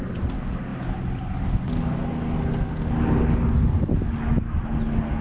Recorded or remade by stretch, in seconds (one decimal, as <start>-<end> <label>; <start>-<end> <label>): 0.0-5.2 recorded